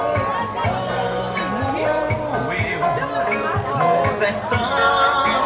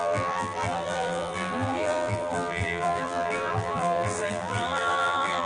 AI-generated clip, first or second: second